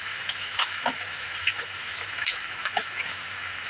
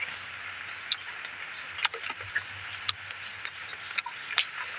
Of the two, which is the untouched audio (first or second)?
second